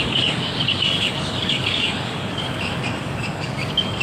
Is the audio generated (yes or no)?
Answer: yes